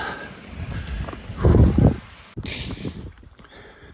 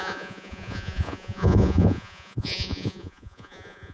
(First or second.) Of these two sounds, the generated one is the second